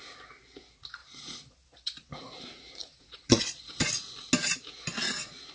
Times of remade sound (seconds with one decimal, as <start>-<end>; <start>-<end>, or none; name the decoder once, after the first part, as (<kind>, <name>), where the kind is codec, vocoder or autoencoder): 1.0-2.1 (vocoder, Vocos); 2.8-3.9